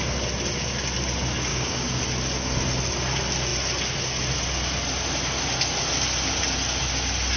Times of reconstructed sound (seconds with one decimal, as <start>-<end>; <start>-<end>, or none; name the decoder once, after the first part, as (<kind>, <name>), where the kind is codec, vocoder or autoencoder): 1.5-2.0 (codec, DAC)